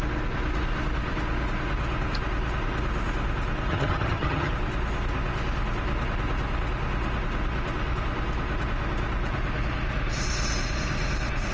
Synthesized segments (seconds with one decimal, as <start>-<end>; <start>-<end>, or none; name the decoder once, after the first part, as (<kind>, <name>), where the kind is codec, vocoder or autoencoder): 3.7-4.5 (vocoder, HiFi-GAN)